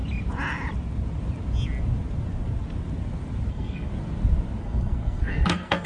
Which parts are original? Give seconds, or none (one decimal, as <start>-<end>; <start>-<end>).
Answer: 0.0-3.5; 3.9-4.6